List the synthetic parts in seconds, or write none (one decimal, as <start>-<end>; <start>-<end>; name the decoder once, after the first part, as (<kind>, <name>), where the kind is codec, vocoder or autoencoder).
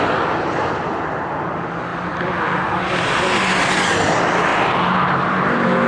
4.5-5.9 (vocoder, BigVGAN v2)